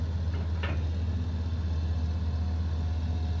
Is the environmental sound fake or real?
real